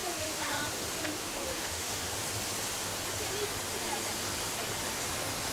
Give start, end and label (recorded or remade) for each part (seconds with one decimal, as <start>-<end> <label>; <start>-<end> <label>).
0.0-0.6 remade; 0.6-1.2 recorded; 1.2-2.1 remade; 2.1-5.5 recorded